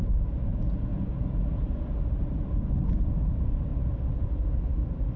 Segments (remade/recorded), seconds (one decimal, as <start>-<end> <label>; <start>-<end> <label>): 0.0-3.7 recorded; 3.7-4.7 remade; 4.7-5.2 recorded